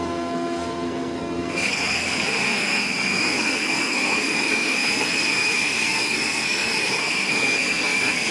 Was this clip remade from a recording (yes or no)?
yes